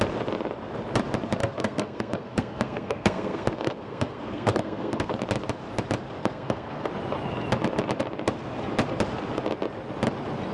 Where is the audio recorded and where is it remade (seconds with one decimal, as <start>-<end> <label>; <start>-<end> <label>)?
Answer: 0.0-1.4 recorded; 1.4-5.1 remade; 5.1-6.2 recorded; 6.2-6.9 remade; 6.9-10.5 recorded